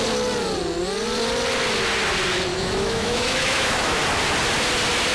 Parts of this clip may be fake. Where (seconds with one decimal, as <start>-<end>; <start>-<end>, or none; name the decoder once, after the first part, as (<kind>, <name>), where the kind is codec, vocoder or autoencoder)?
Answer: 2.5-4.0 (autoencoder, DAC-VAE)